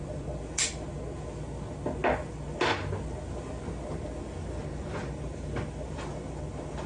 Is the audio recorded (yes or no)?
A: yes